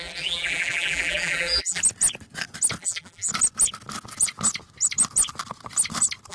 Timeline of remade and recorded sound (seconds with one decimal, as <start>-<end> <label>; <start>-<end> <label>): 0.0-1.8 remade; 1.8-2.8 recorded; 2.8-3.3 remade; 3.3-6.3 recorded